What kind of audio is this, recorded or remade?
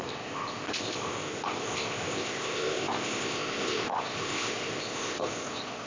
remade